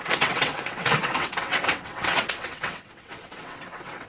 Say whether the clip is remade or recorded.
remade